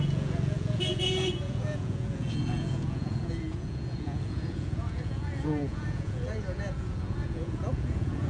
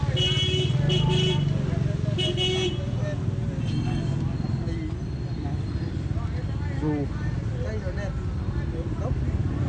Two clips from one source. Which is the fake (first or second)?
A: first